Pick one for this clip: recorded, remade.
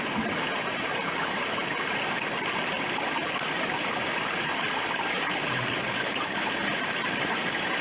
recorded